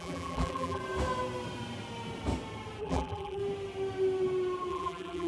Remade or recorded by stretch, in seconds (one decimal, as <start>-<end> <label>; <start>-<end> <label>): 0.0-0.8 remade; 0.8-2.8 recorded; 2.8-3.4 remade; 3.4-4.7 recorded; 4.7-5.3 remade